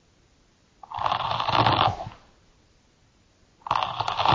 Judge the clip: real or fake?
real